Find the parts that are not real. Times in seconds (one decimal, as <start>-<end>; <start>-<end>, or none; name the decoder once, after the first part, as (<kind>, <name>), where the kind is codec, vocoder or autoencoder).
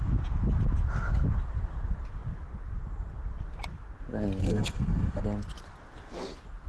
4.4-5.2 (codec, SNAC)